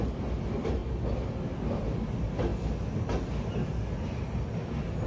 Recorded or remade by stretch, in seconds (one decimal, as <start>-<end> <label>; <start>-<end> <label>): 0.0-5.1 recorded